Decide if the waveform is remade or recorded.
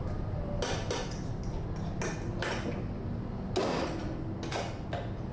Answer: recorded